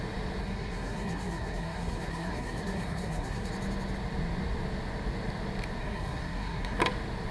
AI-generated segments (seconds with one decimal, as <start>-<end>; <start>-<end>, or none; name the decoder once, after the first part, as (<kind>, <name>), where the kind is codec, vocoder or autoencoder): 0.4-3.5 (codec, SNAC); 5.8-6.8